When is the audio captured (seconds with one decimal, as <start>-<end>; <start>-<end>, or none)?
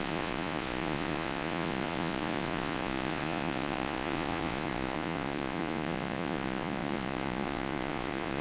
none